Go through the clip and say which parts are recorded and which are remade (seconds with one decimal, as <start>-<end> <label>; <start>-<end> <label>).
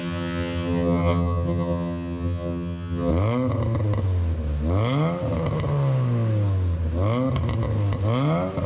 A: 0.0-3.1 remade; 3.1-8.7 recorded